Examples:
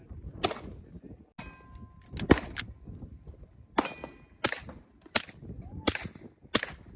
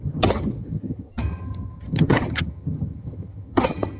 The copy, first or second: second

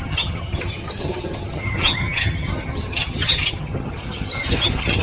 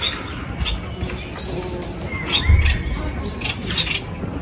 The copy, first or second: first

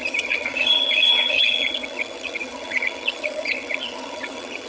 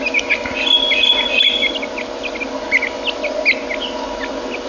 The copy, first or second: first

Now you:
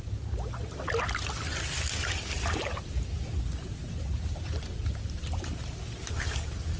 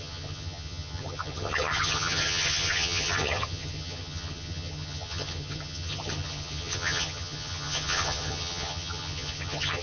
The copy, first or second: second